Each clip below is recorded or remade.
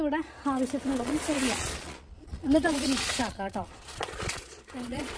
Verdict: remade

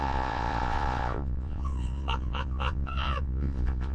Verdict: remade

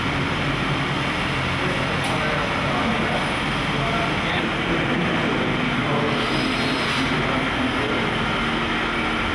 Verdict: recorded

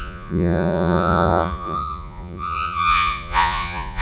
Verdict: remade